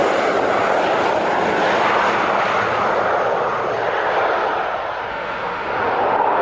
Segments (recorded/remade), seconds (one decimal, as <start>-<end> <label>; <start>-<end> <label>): 0.0-5.1 recorded; 5.1-5.7 remade; 5.7-6.4 recorded